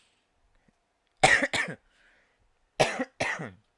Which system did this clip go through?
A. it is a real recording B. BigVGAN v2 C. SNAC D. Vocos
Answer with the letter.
A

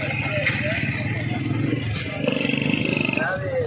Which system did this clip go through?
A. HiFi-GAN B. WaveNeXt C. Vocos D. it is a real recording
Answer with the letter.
D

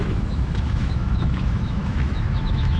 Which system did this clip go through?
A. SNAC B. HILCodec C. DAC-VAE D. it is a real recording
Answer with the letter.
C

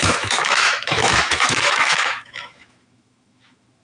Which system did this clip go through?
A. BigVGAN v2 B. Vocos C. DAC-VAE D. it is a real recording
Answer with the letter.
C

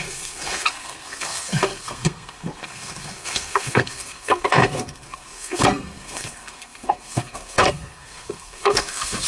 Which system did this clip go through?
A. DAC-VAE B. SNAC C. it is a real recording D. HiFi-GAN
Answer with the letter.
B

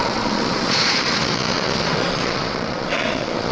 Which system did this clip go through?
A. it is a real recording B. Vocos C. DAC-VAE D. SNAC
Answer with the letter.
B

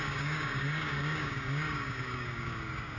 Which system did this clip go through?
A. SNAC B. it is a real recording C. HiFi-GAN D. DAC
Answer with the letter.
D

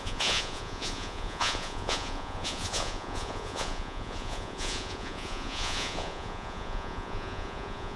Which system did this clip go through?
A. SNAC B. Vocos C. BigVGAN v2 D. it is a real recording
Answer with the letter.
B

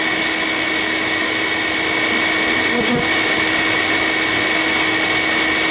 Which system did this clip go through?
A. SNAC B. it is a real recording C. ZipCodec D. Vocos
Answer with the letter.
B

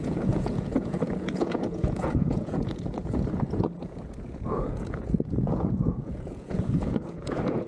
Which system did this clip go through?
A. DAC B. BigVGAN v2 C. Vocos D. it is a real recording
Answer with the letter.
C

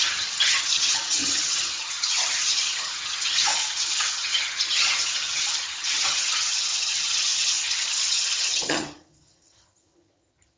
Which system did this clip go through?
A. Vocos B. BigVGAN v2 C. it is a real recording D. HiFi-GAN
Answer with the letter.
D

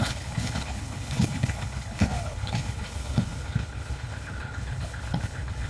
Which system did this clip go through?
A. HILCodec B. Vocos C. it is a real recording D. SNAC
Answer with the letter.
A